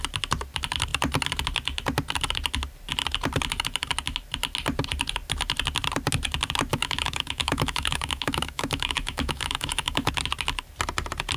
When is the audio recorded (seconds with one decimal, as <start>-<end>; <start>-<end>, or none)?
0.0-6.7; 10.1-11.4